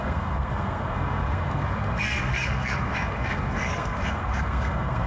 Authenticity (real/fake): fake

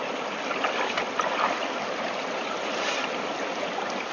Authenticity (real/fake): real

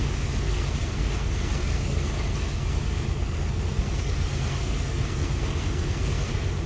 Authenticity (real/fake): fake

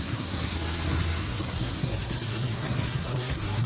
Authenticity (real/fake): fake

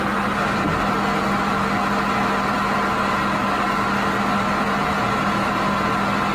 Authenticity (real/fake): real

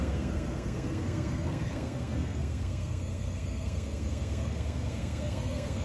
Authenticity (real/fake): fake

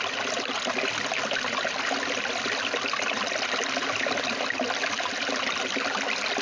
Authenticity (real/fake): real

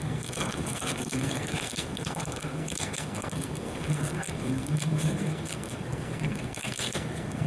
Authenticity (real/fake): fake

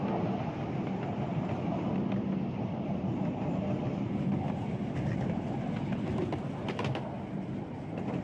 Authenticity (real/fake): real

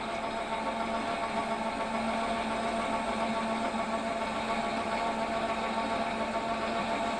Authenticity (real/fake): real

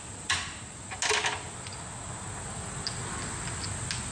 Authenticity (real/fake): real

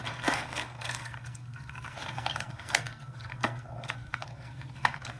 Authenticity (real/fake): fake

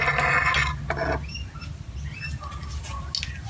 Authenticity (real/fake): real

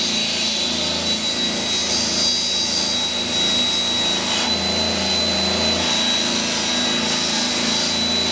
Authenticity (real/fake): real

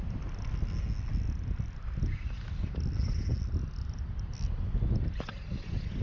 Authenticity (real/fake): real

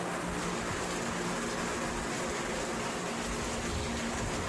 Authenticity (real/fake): real